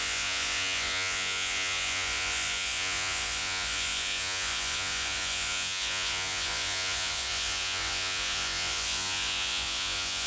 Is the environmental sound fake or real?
fake